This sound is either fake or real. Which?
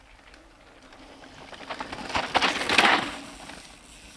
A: real